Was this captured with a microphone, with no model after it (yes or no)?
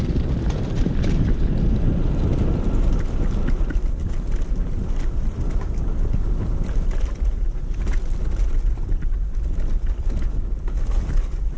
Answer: no